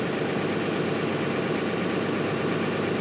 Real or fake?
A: real